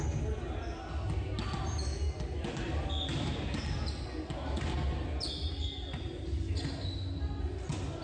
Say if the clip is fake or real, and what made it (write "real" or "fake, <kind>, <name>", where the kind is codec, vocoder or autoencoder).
real